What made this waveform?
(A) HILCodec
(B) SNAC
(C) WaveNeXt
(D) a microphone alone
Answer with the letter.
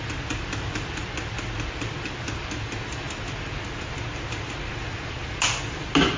D